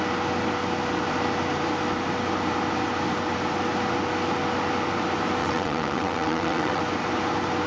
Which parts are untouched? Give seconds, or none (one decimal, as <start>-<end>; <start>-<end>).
0.0-5.4; 6.8-7.7